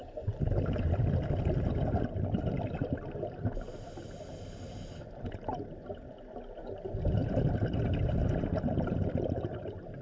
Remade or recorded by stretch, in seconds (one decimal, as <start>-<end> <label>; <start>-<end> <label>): 0.0-10.0 recorded